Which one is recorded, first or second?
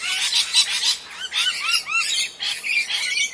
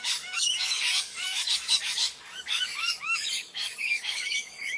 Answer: first